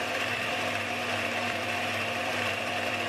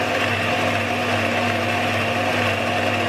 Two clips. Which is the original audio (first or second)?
second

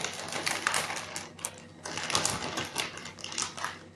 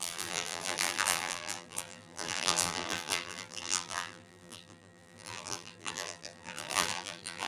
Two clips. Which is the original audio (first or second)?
first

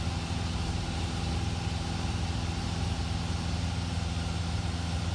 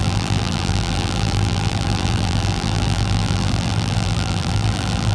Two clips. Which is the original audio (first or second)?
first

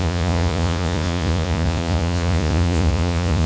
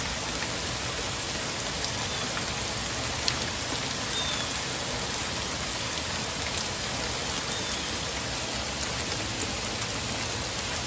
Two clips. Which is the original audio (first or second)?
second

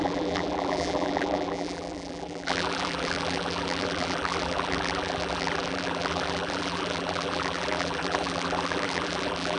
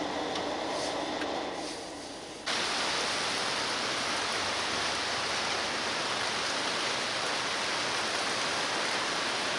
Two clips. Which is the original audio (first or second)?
second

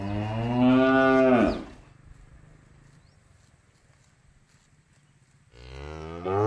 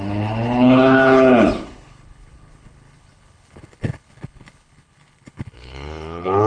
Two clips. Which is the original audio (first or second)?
first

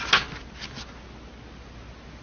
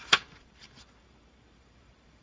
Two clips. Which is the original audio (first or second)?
first